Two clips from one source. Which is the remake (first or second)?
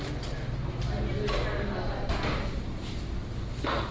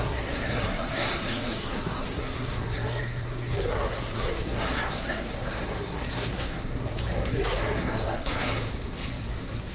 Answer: second